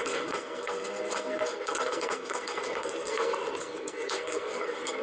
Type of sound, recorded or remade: remade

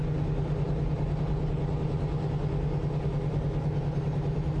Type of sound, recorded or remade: recorded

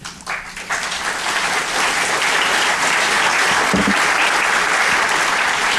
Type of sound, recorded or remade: recorded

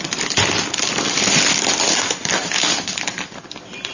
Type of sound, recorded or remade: recorded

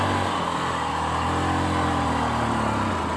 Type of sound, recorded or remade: recorded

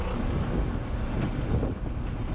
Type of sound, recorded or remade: recorded